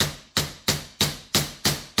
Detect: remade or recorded recorded